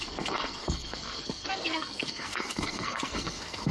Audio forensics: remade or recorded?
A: remade